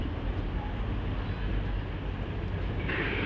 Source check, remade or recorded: recorded